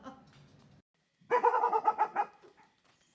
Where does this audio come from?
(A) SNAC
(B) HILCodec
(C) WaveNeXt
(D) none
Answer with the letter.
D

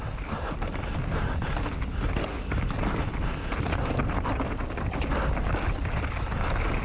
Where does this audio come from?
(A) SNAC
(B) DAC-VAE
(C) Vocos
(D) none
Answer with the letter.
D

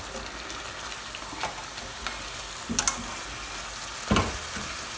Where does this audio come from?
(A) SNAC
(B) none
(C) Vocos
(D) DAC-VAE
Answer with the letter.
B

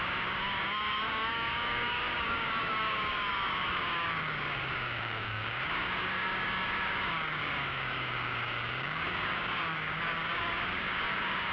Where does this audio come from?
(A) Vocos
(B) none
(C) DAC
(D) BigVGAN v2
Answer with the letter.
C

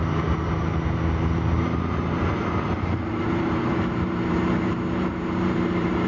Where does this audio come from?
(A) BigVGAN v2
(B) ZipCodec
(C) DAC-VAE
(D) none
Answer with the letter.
A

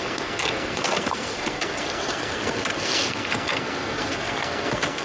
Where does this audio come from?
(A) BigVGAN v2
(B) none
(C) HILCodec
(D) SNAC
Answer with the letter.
D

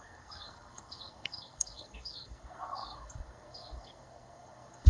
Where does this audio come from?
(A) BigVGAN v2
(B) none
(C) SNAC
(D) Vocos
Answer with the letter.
C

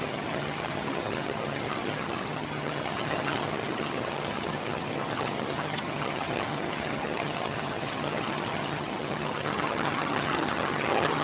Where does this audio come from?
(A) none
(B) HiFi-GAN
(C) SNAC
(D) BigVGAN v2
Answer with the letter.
B